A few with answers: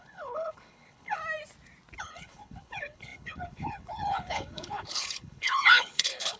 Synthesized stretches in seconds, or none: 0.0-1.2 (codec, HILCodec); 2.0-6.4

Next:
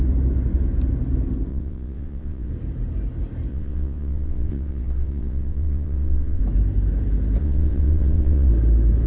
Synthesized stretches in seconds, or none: 1.5-2.5 (vocoder, WaveNeXt); 3.5-6.4; 7.4-8.5

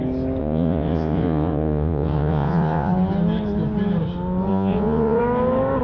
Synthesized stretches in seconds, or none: 0.4-2.9 (vocoder, Vocos); 4.5-5.2

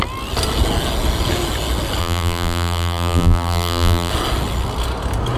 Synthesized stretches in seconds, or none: 2.0-4.1 (vocoder, BigVGAN v2)

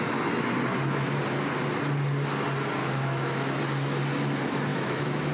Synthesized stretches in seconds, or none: 2.8-3.6 (autoencoder, DAC-VAE); 4.7-5.3

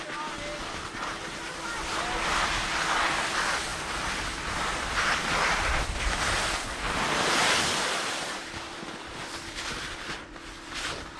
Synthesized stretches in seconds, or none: none